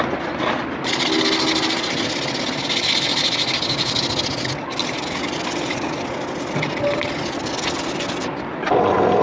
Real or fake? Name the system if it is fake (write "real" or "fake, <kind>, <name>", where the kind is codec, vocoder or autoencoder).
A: real